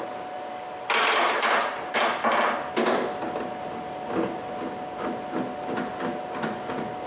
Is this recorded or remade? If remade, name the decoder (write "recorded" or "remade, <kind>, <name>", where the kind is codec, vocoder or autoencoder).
recorded